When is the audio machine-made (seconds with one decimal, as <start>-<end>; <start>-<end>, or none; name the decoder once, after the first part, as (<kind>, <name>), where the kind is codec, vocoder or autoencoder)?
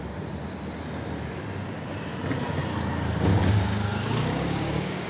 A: 3.3-5.1 (codec, DAC)